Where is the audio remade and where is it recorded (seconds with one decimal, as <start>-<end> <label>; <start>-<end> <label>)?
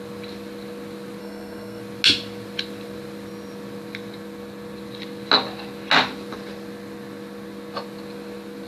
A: 0.0-1.2 recorded; 1.2-1.8 remade; 1.8-8.7 recorded